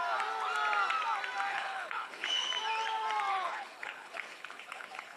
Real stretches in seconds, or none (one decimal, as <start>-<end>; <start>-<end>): 0.0-1.5; 2.5-3.3